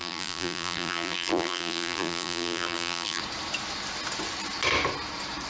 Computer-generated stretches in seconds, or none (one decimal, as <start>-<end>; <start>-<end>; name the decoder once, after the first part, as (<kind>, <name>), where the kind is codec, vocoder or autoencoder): 0.0-3.2 (vocoder, BigVGAN v2)